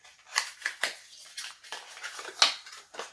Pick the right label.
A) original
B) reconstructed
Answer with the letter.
A